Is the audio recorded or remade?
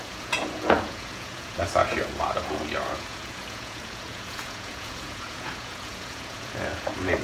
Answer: remade